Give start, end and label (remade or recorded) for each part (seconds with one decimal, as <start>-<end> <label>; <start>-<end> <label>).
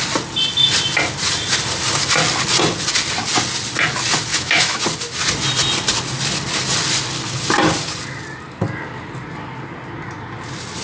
0.0-4.3 recorded; 4.3-4.8 remade; 4.8-10.8 recorded